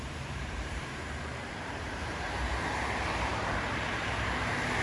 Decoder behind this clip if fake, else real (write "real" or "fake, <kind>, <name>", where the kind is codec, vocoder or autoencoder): fake, vocoder, BigVGAN v2